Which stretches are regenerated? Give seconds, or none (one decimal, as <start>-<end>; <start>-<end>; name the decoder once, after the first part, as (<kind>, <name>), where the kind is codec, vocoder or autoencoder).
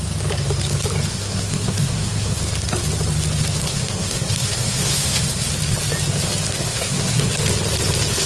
1.1-2.4 (codec, SNAC); 3.7-5.5; 6.7-7.3